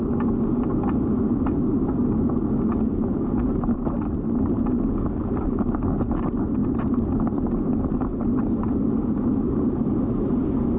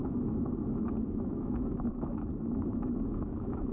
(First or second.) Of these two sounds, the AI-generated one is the second